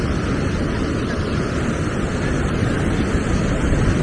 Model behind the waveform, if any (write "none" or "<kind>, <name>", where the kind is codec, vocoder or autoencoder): none